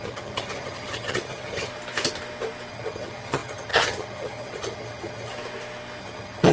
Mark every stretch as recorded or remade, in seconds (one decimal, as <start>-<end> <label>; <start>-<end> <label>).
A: 0.0-1.7 remade; 1.7-2.7 recorded; 2.7-5.3 remade; 5.3-6.0 recorded; 6.0-6.5 remade